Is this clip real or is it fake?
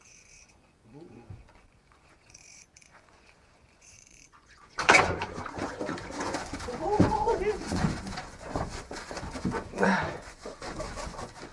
fake